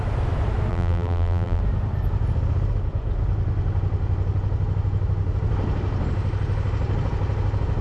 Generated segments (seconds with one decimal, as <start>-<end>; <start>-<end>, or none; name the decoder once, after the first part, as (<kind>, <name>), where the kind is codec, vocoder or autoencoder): 0.7-1.6 (vocoder, BigVGAN v2)